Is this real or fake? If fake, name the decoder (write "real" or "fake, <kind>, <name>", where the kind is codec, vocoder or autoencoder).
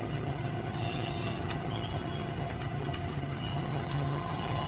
fake, vocoder, HiFi-GAN